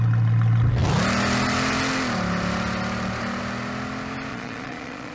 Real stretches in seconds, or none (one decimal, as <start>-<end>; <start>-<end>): 0.0-4.3